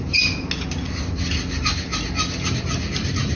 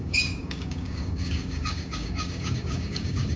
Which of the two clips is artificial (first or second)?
second